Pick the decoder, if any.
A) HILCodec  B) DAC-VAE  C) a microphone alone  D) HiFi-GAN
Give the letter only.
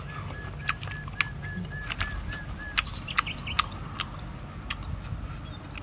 C